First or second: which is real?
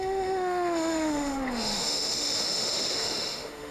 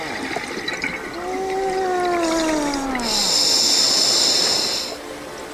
second